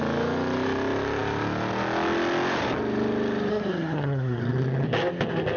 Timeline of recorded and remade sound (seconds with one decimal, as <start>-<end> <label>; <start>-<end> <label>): 0.0-3.5 recorded; 3.5-4.4 remade; 4.4-5.6 recorded